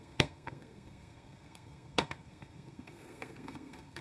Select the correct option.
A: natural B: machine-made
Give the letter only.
B